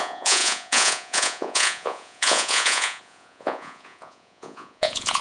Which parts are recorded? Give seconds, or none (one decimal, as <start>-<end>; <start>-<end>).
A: none